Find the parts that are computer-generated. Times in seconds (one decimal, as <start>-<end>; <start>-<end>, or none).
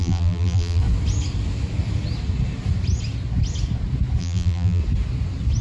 0.0-0.8; 4.2-4.8